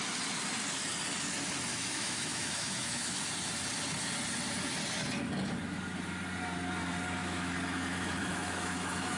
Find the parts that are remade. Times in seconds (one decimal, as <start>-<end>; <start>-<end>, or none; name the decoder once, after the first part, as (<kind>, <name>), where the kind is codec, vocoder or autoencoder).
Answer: 1.7-3.2 (autoencoder, DAC-VAE); 7.2-9.2